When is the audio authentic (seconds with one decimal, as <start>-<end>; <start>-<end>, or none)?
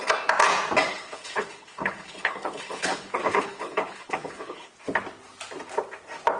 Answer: 0.0-0.9; 4.7-6.4